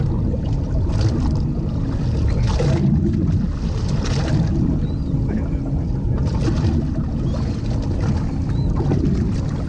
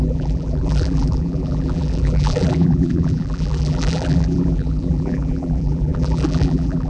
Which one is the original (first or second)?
first